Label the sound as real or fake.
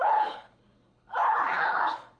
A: fake